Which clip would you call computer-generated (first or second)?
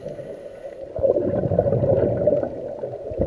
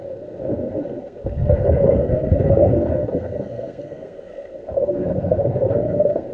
second